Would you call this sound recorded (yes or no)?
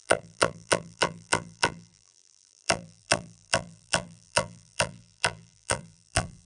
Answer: no